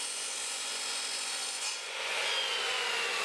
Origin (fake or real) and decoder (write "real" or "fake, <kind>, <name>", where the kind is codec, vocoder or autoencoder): fake, vocoder, Vocos